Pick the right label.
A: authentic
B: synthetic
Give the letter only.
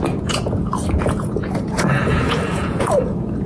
B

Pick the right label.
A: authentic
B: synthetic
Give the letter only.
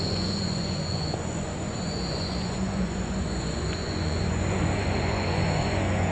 B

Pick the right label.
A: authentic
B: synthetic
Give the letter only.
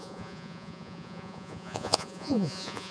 B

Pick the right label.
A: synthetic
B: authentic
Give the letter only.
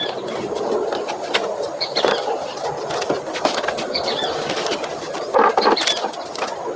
B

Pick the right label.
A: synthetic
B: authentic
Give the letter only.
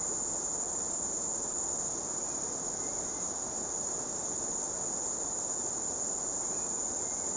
B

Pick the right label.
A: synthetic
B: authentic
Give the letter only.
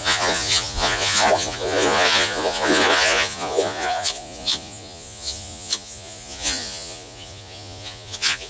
A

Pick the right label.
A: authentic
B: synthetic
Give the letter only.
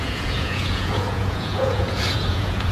B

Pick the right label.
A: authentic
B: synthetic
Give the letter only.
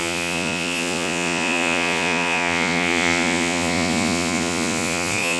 B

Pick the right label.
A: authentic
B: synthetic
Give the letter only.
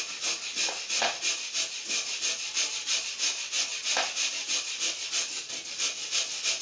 A